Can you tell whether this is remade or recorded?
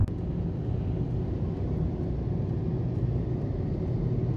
recorded